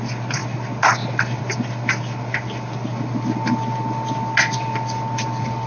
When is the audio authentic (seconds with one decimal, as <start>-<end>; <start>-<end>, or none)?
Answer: 0.0-5.7